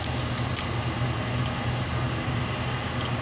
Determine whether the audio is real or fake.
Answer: real